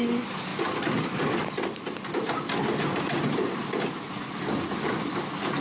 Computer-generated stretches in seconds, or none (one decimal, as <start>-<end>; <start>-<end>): none